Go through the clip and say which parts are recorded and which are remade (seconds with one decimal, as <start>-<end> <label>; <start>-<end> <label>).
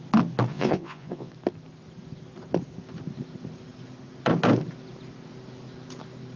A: 0.0-0.5 recorded; 0.5-1.3 remade; 1.3-6.4 recorded